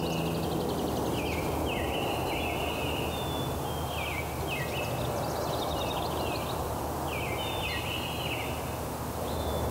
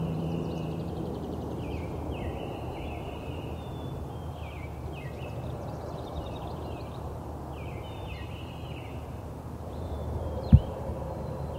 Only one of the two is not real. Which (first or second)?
second